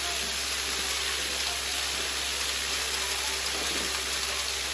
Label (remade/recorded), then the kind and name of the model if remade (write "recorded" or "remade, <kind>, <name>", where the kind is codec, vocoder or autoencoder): recorded